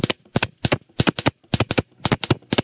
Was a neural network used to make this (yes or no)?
no